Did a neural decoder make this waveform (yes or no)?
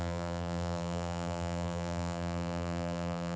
yes